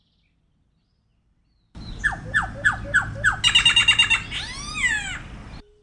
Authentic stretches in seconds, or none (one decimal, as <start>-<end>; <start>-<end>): 0.0-1.1; 3.4-5.8